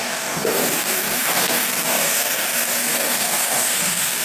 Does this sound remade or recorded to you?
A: remade